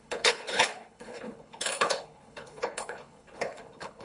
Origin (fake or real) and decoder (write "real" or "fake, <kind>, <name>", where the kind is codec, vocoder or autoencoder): fake, codec, HILCodec